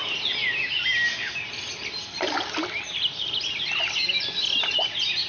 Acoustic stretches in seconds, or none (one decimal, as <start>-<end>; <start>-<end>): 0.0-5.3